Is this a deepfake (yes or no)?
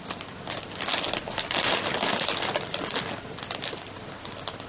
no